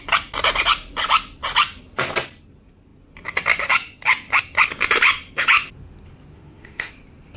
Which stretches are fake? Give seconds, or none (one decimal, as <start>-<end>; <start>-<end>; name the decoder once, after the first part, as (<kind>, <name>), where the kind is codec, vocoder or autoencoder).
6.3-6.9 (autoencoder, DAC-VAE)